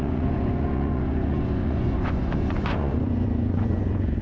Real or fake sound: fake